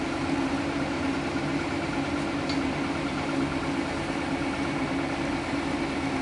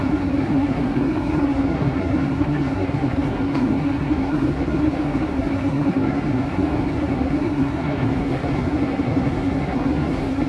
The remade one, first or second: second